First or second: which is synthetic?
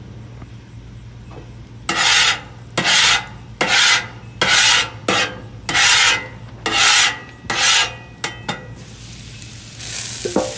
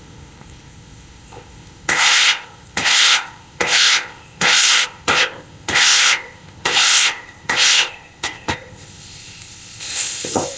second